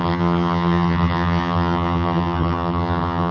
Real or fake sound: fake